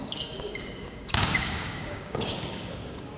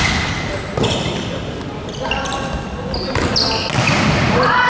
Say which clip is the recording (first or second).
second